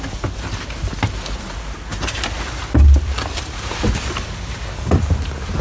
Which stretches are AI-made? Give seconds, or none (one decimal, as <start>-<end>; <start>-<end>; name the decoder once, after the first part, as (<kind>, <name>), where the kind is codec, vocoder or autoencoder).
1.9-5.6 (vocoder, BigVGAN v2)